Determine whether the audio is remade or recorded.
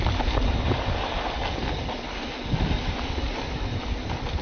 recorded